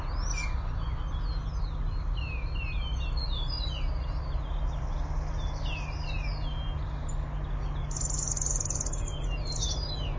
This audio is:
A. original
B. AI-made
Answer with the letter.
A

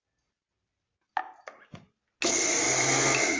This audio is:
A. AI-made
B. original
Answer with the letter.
B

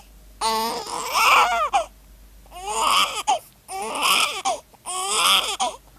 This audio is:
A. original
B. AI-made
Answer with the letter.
A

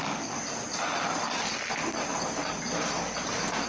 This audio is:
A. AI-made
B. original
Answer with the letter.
B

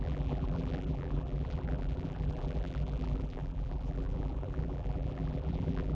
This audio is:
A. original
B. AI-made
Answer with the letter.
B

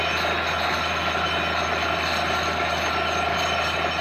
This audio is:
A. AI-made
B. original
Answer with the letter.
B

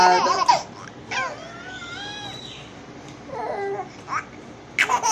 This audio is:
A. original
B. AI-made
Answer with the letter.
A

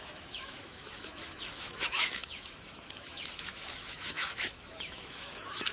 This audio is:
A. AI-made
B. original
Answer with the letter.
A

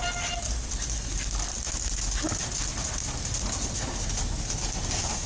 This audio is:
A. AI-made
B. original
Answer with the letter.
B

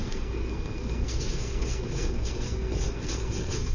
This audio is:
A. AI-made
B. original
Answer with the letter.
A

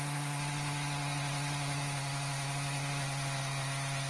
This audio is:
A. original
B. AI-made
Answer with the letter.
A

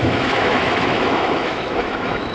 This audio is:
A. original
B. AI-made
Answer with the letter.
B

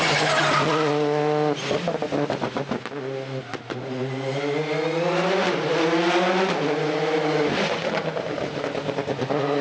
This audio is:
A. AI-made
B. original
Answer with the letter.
B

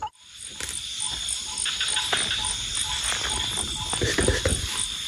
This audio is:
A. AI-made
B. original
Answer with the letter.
B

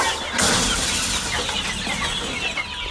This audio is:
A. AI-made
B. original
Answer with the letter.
B